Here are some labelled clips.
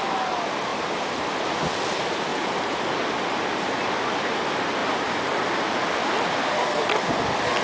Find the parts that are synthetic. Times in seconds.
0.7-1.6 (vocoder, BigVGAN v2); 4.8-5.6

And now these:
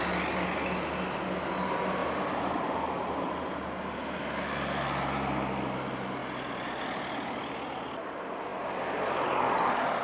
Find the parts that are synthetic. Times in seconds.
2.0-4.2 (vocoder, BigVGAN v2)

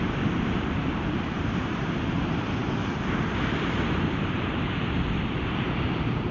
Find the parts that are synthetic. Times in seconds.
0.0-2.6 (vocoder, BigVGAN v2); 3.5-6.3

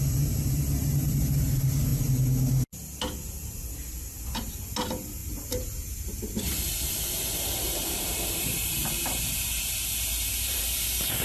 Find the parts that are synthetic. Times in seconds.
0.0-1.9 (vocoder, BigVGAN v2); 4.3-11.2

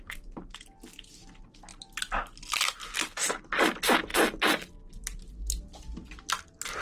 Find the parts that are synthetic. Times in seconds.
none

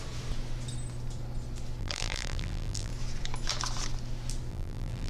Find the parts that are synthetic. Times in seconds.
1.8-2.9 (vocoder, BigVGAN v2); 4.5-5.1